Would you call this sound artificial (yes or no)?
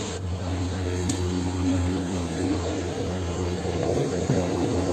yes